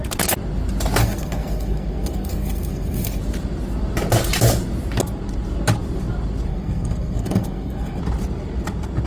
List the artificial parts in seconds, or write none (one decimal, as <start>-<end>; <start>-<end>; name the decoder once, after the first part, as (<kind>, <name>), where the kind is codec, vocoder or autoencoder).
1.0-3.2 (codec, SNAC); 6.5-8.0